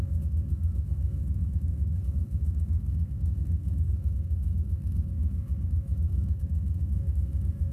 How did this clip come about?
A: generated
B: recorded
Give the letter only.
A